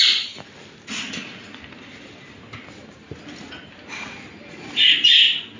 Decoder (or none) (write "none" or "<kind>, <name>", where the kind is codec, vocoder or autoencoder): none